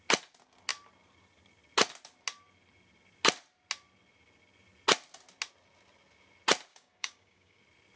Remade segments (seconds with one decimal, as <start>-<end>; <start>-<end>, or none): 6.7-7.6